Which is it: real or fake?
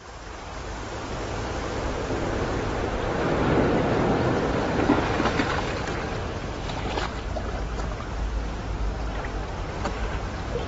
real